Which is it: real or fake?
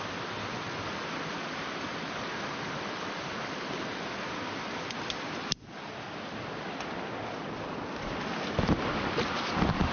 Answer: real